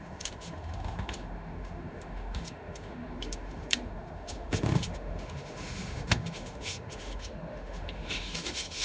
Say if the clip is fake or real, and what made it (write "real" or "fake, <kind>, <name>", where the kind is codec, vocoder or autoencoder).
fake, autoencoder, DAC-VAE